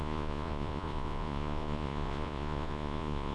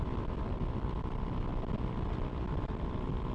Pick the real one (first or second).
second